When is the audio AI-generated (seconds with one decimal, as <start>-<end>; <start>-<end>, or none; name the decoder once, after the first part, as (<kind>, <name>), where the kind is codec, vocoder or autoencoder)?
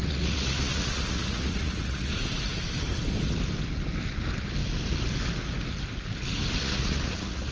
0.0-2.1 (vocoder, Vocos); 6.6-7.5